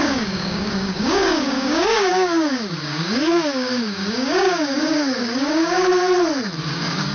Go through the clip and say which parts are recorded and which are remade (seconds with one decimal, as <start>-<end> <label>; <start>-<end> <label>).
0.0-5.9 remade; 5.9-6.6 recorded; 6.6-7.1 remade